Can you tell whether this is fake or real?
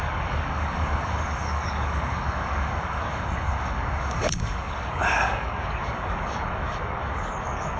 fake